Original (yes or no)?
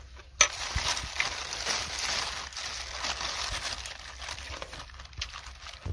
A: yes